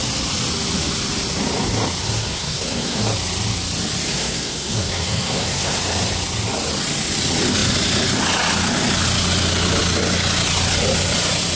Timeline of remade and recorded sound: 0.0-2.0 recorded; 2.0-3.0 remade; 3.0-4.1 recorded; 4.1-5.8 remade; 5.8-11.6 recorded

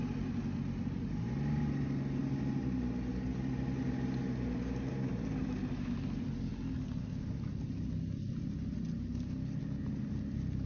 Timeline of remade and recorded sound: 0.0-10.7 recorded

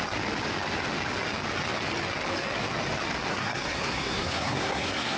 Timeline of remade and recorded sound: 0.0-3.3 recorded; 3.3-5.2 remade